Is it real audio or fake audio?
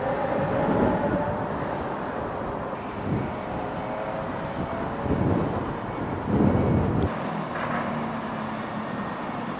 real